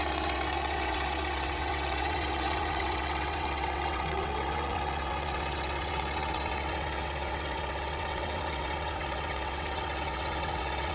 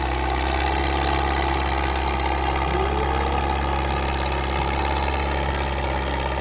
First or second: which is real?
second